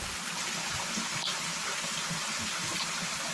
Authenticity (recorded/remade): recorded